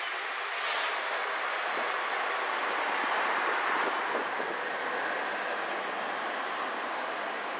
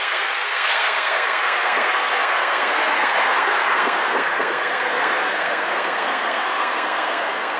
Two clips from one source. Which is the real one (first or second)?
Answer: first